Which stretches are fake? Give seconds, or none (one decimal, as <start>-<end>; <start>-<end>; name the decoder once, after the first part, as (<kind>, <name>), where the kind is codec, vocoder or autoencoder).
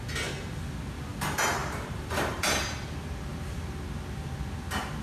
1.6-2.6 (vocoder, BigVGAN v2)